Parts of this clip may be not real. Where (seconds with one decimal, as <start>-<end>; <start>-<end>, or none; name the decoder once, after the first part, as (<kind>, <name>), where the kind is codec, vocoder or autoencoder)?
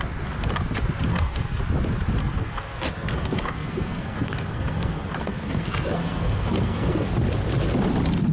1.1-1.6 (codec, SNAC); 2.2-7.1